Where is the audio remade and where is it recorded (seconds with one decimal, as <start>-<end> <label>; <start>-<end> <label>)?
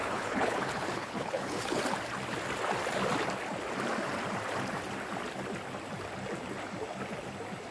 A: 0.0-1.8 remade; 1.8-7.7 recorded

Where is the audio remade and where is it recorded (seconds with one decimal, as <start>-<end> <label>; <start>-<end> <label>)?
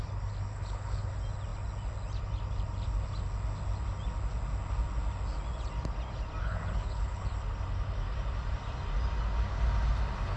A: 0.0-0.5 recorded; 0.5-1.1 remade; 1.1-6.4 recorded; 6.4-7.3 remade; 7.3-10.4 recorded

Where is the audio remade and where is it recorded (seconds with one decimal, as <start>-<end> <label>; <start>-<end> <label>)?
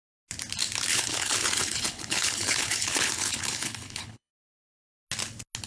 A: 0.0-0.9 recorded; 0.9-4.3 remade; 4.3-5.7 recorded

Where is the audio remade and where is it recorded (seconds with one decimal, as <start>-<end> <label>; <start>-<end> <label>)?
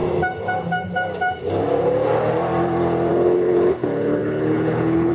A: 0.0-3.1 recorded; 3.1-5.1 remade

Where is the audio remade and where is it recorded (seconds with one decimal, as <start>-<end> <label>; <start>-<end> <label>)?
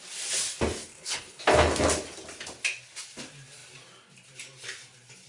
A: 0.0-0.9 recorded; 0.9-1.4 remade; 1.4-5.3 recorded